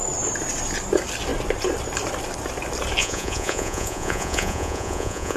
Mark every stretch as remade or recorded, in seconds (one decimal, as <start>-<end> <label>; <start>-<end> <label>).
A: 0.0-3.0 recorded; 3.0-5.4 remade